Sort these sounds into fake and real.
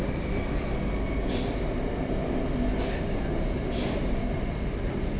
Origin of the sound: real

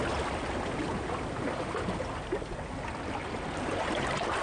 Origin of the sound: real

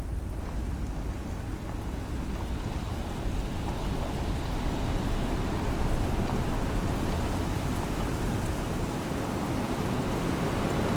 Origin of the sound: real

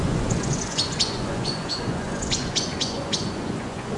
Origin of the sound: fake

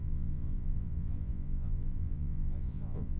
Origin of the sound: fake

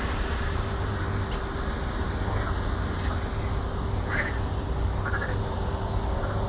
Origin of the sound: real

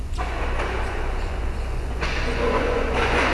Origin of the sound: fake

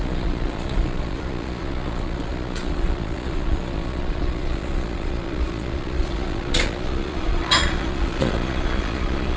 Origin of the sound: fake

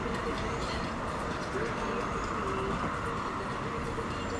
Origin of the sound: real